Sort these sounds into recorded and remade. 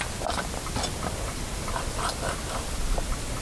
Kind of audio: recorded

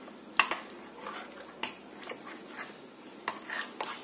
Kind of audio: recorded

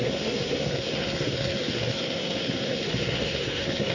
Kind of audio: remade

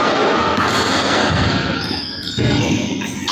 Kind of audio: remade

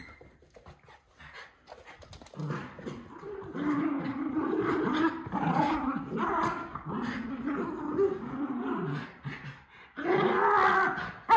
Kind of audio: recorded